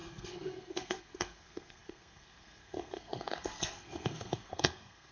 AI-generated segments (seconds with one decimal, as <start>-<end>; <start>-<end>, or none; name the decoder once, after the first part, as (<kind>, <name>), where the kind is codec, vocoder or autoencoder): 0.0-5.1 (codec, SNAC)